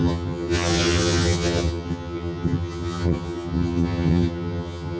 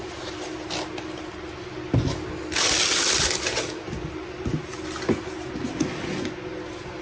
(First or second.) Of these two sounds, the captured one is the second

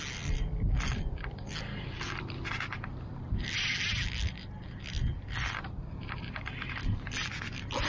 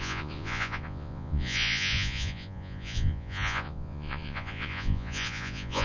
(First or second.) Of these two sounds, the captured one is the first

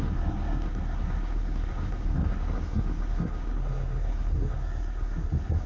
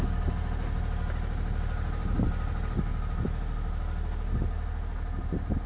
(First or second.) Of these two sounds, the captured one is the second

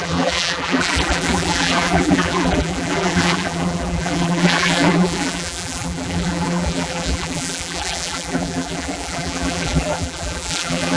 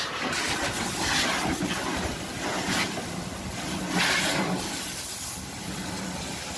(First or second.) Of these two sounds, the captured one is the second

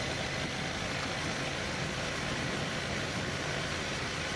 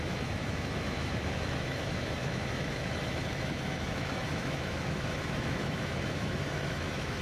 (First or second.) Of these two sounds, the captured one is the first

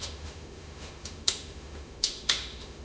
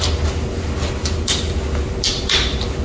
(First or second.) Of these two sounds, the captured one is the second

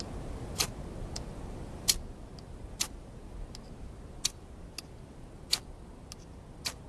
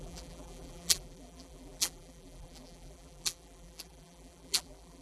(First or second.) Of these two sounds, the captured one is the first